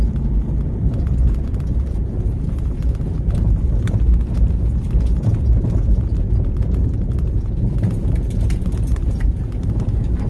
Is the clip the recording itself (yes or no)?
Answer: no